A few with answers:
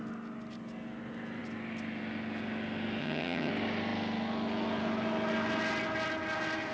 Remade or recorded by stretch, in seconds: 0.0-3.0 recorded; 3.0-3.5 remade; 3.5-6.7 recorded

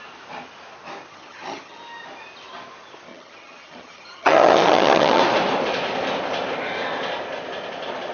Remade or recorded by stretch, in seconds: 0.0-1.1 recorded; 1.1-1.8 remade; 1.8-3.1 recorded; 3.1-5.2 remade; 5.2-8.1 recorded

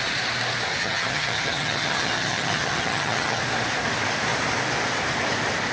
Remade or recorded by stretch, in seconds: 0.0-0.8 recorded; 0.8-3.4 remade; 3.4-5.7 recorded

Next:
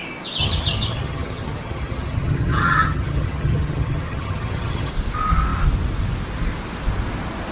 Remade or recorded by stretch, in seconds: 0.0-0.4 recorded; 0.4-4.9 remade; 4.9-7.5 recorded

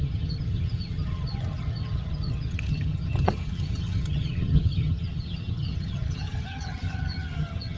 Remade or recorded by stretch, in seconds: 0.0-7.8 remade